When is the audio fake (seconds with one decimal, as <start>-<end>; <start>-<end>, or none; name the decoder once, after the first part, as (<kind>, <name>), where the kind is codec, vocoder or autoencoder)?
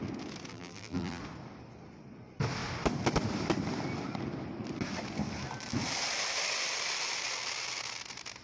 0.5-1.2 (vocoder, BigVGAN v2)